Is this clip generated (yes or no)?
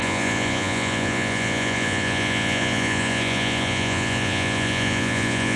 yes